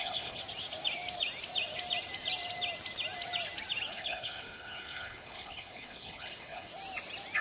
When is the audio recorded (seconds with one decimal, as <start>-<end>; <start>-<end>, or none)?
0.4-3.9; 6.7-7.4